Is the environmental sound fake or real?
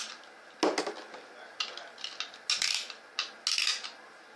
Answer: real